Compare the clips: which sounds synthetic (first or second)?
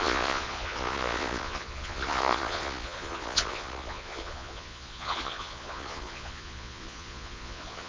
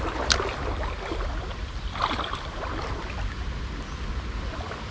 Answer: first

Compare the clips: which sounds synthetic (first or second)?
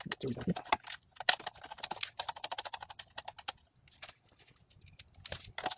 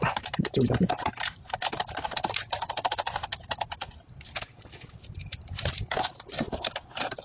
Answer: second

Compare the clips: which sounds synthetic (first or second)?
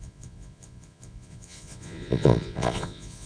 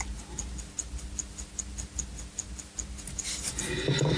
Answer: first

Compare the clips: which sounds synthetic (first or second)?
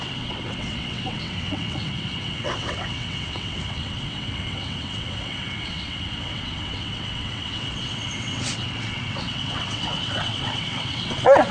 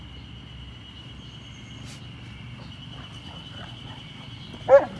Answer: first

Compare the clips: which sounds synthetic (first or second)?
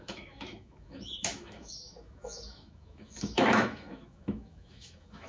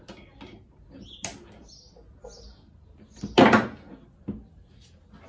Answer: first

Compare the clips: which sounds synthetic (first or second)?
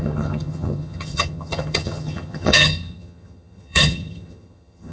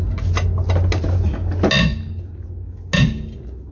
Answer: first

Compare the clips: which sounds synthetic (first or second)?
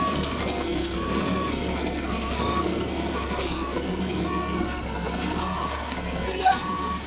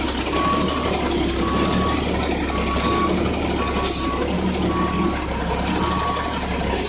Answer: first